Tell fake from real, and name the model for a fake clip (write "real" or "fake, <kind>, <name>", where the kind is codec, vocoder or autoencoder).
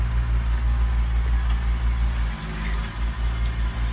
real